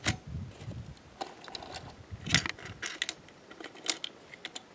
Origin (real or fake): real